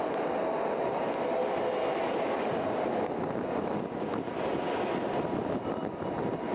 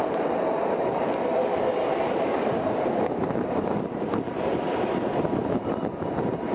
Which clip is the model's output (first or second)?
second